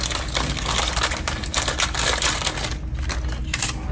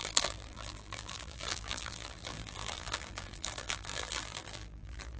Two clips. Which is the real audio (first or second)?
first